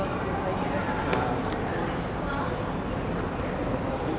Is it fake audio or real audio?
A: real